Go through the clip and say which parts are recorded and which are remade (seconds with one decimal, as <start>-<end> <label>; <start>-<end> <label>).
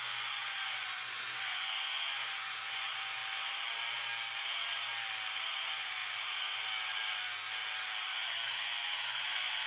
0.0-3.2 remade; 3.2-5.6 recorded; 5.6-6.0 remade; 6.0-8.6 recorded; 8.6-9.7 remade